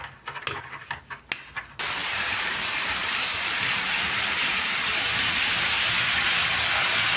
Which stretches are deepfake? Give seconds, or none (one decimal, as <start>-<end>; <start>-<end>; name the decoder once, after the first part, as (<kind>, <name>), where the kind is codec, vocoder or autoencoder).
2.0-5.0 (vocoder, BigVGAN v2); 6.5-7.2

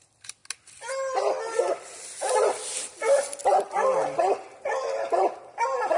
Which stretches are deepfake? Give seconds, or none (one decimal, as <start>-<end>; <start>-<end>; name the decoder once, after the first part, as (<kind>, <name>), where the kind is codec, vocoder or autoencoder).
0.0-0.4 (vocoder, BigVGAN v2); 1.8-6.0